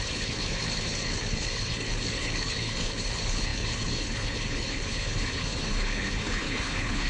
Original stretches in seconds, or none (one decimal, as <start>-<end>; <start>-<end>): none